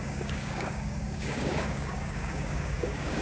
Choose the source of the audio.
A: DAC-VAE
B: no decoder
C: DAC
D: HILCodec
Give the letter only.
C